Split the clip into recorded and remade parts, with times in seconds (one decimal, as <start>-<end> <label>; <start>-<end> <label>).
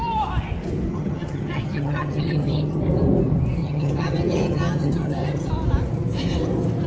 0.0-0.9 recorded; 0.9-2.8 remade; 2.8-3.6 recorded; 3.6-5.5 remade; 5.5-6.9 recorded